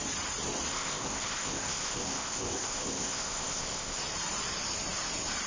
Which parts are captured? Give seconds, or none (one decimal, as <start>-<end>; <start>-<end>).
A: 0.0-0.7; 4.0-5.5